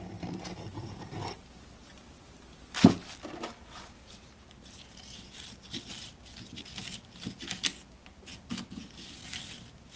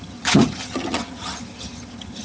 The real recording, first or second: first